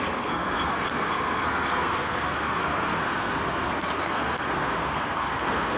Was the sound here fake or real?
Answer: fake